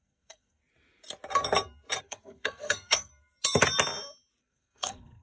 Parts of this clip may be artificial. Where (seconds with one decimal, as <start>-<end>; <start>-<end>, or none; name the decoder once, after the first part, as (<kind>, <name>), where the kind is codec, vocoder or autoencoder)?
0.0-0.6 (codec, SNAC); 2.0-3.1; 4.4-5.2